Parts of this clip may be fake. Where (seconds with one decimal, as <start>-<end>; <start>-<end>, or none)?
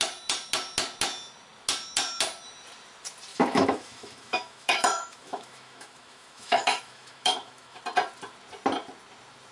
3.3-7.8